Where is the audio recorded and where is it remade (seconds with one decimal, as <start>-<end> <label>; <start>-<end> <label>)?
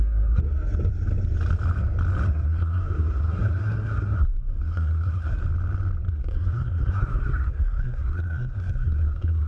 0.0-0.4 remade; 0.4-2.3 recorded; 2.3-5.4 remade; 5.4-6.1 recorded; 6.1-9.5 remade